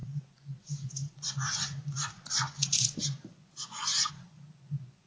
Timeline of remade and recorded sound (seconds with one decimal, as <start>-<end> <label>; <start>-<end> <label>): 0.0-5.1 remade